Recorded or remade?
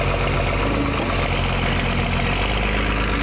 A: recorded